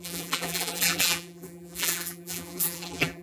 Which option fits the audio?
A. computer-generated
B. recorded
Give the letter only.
A